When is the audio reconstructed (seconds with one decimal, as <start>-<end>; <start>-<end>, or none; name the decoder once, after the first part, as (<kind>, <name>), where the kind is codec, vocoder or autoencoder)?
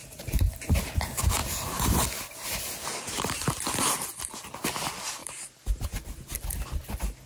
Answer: 0.0-0.9 (vocoder, BigVGAN v2); 1.4-3.5; 5.2-6.2